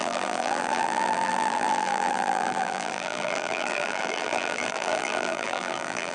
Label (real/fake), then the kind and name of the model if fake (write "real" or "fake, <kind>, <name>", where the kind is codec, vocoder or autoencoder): fake, vocoder, BigVGAN v2